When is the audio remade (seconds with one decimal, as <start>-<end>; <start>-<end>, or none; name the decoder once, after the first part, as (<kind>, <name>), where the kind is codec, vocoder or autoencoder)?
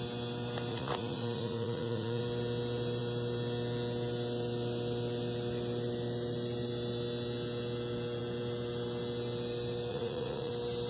0.7-2.2 (vocoder, Vocos); 9.9-10.5